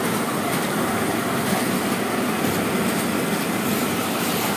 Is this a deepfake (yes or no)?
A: no